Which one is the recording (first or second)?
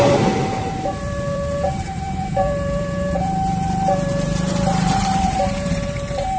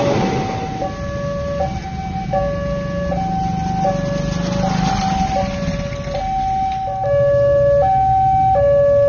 second